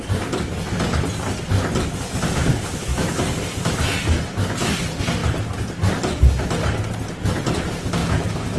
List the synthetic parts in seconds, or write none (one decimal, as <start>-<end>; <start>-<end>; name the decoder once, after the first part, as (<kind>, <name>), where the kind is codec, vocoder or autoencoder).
2.5-3.1 (autoencoder, DAC-VAE); 8.0-8.6